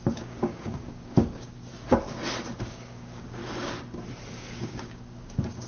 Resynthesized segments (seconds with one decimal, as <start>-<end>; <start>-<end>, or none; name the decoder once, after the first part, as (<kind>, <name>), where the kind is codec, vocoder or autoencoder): 0.0-1.7 (codec, DAC); 2.6-3.4; 4.3-5.7